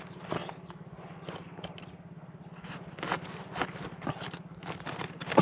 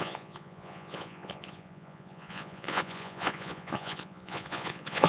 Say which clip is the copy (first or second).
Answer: second